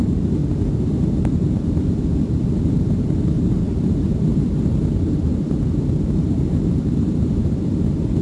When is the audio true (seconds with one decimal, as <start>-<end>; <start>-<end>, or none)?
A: 0.4-0.9